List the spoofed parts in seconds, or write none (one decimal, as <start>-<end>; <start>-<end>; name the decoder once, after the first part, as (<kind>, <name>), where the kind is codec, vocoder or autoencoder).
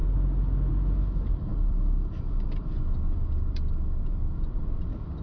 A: 1.5-4.6 (vocoder, BigVGAN v2)